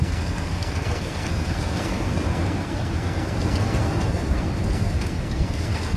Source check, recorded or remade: remade